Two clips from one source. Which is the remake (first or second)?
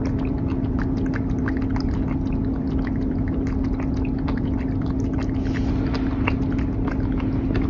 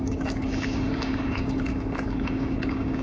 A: second